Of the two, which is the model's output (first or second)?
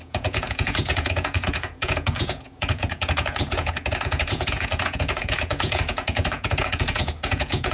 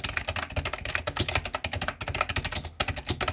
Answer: first